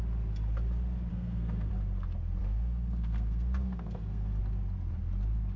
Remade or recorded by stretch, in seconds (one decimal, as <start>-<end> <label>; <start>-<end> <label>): 0.0-1.1 recorded; 1.1-1.7 remade; 1.7-2.4 recorded; 2.4-4.4 remade; 4.4-5.6 recorded